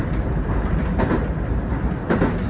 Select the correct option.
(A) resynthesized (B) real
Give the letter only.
B